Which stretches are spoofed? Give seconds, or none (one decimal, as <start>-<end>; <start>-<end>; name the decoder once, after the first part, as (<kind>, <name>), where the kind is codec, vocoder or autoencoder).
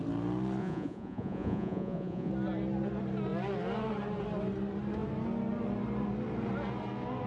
0.6-2.3 (vocoder, Vocos)